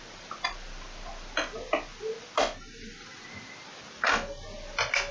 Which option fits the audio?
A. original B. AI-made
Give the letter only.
A